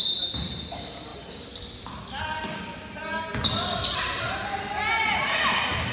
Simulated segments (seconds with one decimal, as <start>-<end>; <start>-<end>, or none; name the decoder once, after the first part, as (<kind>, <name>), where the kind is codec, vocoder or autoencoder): none